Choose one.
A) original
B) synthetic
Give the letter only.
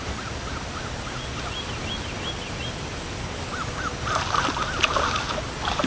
A